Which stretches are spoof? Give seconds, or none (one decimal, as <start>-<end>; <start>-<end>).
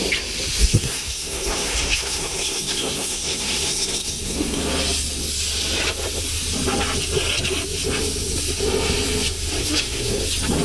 0.6-4.6; 9.6-10.2